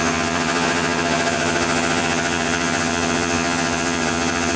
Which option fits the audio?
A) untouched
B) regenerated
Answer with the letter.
B